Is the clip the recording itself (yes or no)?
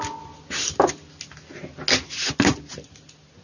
yes